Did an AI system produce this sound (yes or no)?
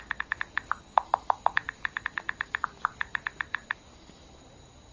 no